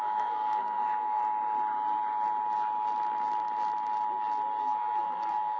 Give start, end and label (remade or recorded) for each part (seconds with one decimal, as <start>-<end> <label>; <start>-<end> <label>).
0.0-1.2 remade; 1.2-4.6 recorded; 4.6-5.6 remade